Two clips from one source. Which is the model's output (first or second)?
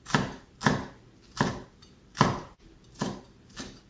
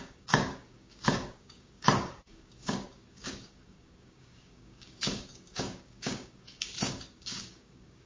second